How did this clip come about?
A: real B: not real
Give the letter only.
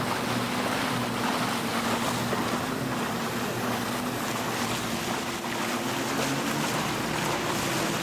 A